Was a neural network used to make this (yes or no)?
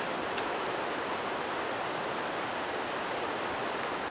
no